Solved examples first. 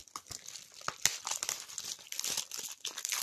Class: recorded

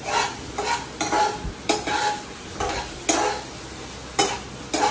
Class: recorded